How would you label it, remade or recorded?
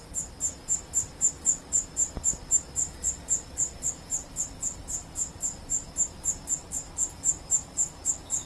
recorded